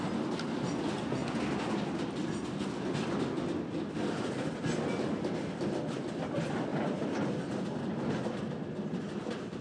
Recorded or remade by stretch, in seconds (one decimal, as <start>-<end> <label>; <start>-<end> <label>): 0.0-9.6 recorded